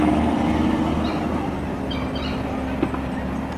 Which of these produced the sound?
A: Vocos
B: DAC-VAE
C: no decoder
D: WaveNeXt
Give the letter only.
C